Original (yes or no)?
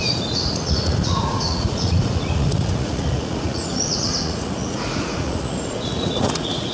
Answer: no